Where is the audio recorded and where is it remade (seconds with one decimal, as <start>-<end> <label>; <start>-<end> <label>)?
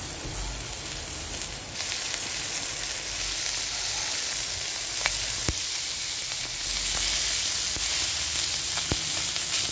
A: 0.0-9.7 recorded